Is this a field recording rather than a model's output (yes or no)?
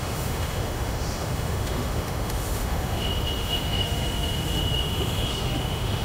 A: no